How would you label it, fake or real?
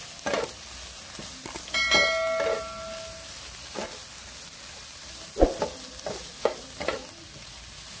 real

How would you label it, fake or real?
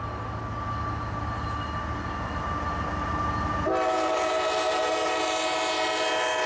real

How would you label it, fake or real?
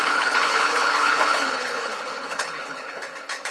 fake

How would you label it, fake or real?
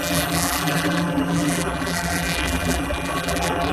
fake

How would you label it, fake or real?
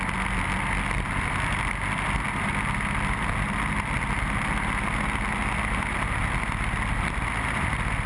real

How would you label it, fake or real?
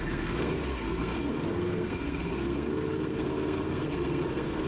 fake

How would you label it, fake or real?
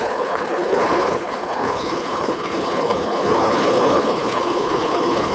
fake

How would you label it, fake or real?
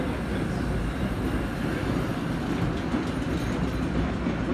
real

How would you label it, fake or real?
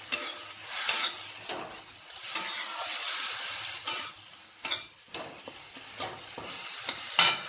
real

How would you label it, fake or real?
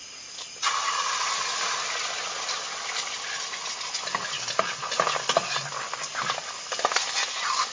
real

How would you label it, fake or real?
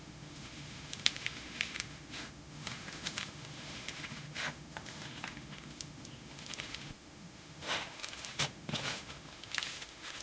fake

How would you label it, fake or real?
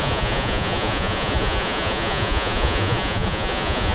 fake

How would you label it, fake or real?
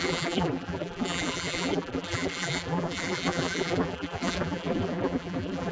fake